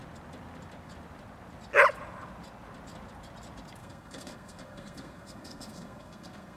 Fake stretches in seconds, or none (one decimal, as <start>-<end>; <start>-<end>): 3.8-6.6